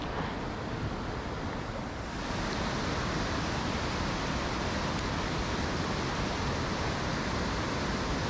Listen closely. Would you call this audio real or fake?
real